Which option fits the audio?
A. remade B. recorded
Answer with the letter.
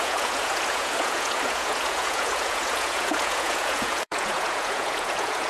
A